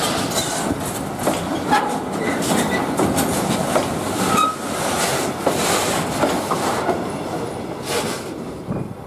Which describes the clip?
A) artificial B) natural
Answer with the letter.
B